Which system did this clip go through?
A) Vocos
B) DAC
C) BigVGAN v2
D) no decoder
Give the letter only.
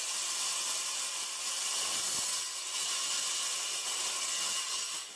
D